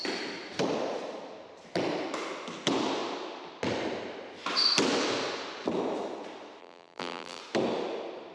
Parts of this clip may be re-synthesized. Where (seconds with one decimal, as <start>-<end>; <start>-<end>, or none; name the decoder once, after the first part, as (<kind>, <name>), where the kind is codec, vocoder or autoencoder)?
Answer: 6.6-7.4 (vocoder, BigVGAN v2)